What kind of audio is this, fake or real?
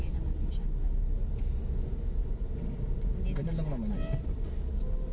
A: real